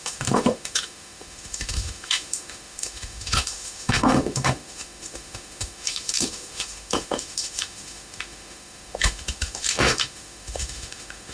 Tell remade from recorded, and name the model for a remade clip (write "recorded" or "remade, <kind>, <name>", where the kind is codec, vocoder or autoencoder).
remade, autoencoder, DAC-VAE